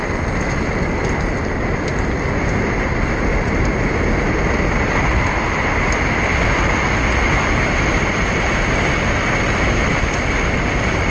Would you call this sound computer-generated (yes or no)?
no